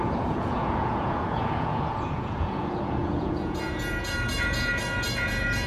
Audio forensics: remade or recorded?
remade